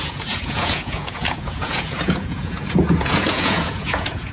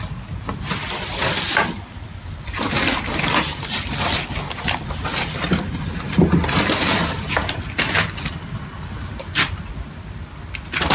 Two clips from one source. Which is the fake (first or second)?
first